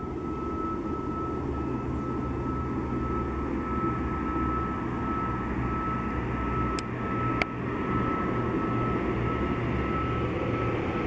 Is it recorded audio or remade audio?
recorded